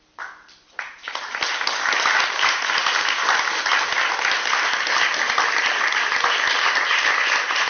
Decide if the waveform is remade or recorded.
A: recorded